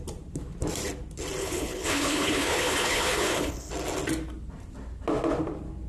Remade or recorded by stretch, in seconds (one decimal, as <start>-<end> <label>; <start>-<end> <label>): 0.0-1.4 recorded; 1.4-3.7 remade; 3.7-5.9 recorded